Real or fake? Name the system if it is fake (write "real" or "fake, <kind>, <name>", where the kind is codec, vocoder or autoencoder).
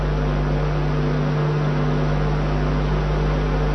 real